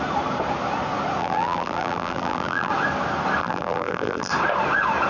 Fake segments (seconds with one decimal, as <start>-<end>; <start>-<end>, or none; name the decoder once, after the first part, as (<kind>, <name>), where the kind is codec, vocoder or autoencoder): 1.2-2.7 (vocoder, BigVGAN v2); 3.4-4.3